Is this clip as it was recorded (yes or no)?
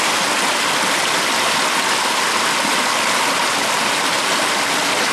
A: yes